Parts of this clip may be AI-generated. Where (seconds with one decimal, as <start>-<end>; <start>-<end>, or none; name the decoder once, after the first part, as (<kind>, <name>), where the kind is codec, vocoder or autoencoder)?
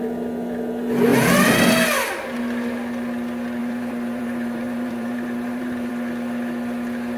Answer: 1.1-1.7 (vocoder, BigVGAN v2); 3.6-5.9